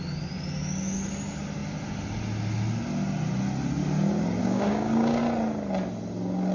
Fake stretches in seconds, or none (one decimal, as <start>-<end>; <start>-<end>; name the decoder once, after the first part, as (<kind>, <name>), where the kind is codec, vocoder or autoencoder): 4.4-5.2 (codec, DAC)